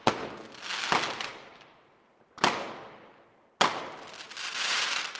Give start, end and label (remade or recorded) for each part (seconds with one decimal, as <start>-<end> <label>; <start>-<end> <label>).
0.0-1.3 recorded; 1.3-2.0 remade; 2.0-5.2 recorded